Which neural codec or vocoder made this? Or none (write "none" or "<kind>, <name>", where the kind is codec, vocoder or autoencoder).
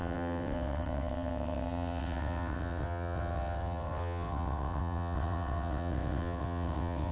vocoder, WaveNeXt